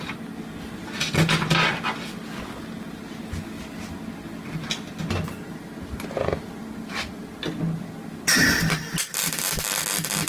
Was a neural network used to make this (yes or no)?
no